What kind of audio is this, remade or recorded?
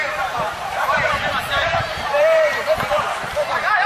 remade